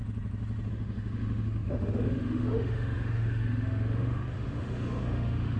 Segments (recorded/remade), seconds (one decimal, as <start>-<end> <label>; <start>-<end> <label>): 0.0-0.7 recorded; 0.7-5.6 remade